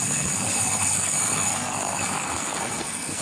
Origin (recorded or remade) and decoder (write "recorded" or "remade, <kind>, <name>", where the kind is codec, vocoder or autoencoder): remade, codec, SNAC